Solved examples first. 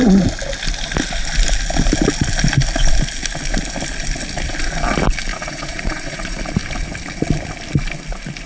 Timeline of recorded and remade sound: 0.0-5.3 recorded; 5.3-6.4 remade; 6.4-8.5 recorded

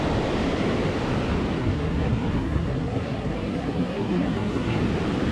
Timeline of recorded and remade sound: 0.0-1.6 recorded; 1.6-4.8 remade; 4.8-5.3 recorded

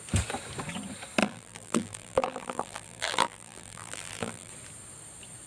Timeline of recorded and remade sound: 0.0-1.2 recorded; 1.2-4.5 remade; 4.5-5.5 recorded

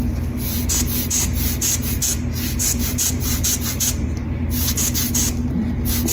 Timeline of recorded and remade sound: 0.0-2.6 recorded; 2.6-4.3 remade; 4.3-6.1 recorded

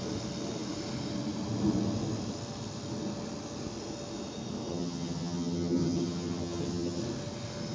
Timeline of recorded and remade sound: 0.0-4.7 recorded; 4.7-7.0 remade; 7.0-7.7 recorded

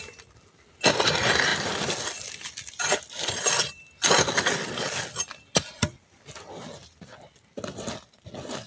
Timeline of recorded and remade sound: 0.0-8.7 recorded